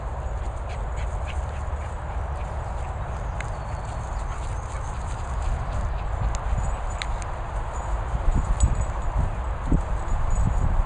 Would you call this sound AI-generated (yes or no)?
no